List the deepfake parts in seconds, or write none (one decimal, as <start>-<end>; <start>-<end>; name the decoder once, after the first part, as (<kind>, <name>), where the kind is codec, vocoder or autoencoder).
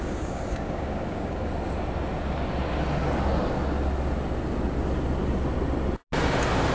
0.0-1.5 (codec, DAC)